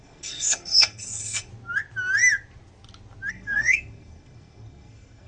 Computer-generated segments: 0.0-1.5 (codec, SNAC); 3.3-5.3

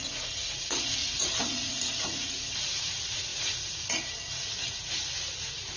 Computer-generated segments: 0.0-5.8 (vocoder, Vocos)

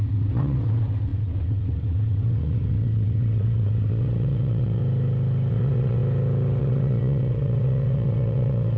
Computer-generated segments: 0.0-4.8 (vocoder, WaveNeXt); 5.5-6.0; 6.6-8.8

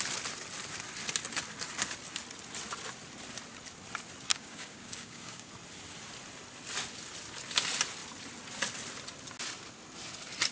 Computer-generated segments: 4.3-5.5 (codec, DAC)

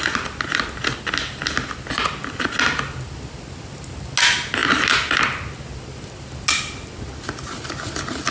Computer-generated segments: none

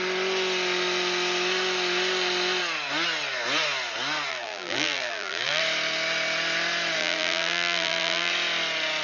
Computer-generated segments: 4.3-5.6 (vocoder, BigVGAN v2); 7.0-8.3

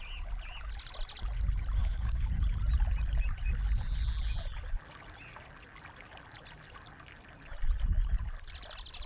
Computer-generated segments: 1.8-2.3 (codec, DAC)